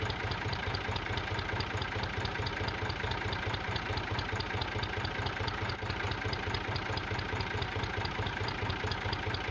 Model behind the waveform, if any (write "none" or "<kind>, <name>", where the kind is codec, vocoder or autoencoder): vocoder, BigVGAN v2